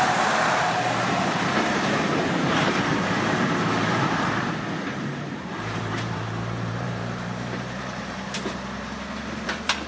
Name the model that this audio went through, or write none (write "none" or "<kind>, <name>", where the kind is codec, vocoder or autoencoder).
vocoder, BigVGAN v2